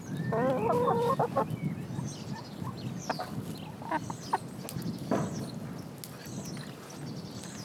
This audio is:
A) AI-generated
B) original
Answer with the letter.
B